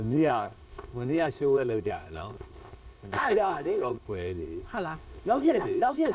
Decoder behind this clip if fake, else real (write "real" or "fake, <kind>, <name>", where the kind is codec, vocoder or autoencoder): fake, codec, ZipCodec